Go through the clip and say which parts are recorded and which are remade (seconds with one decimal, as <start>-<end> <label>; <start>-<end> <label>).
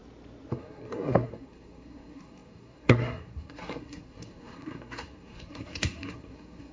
0.0-0.5 recorded; 0.5-6.7 remade